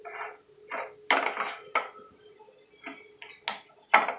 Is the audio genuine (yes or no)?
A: yes